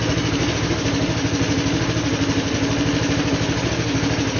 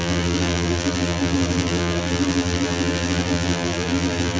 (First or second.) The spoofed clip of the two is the second